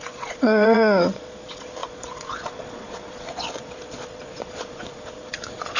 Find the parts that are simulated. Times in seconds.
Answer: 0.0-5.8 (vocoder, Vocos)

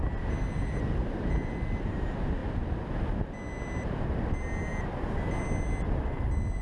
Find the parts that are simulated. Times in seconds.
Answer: none

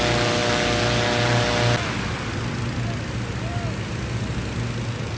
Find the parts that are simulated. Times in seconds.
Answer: none

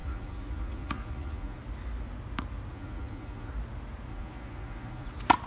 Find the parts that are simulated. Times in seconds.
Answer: 0.0-1.6 (vocoder, Vocos); 2.7-3.5; 4.1-5.1

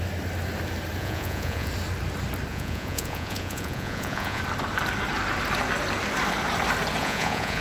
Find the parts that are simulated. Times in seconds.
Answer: 1.0-1.7 (vocoder, Vocos); 2.5-4.4; 7.0-7.6